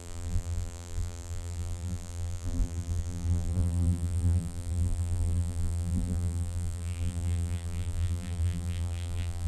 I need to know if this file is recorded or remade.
remade